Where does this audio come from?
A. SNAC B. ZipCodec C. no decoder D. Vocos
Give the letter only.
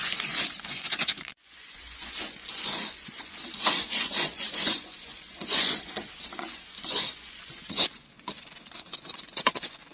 D